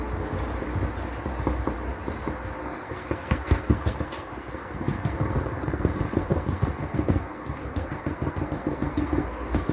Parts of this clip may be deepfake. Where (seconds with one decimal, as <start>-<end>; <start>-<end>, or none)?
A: 2.6-9.7